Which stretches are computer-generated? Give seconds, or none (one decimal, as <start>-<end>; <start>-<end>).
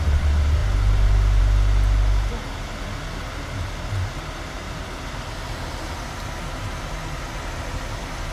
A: none